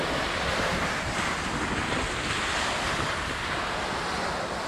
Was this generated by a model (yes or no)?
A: no